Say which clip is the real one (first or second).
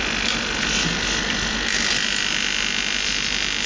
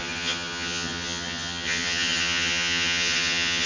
first